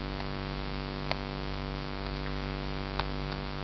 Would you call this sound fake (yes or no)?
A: yes